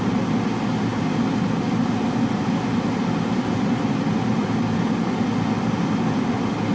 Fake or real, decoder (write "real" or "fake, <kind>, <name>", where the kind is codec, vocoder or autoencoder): real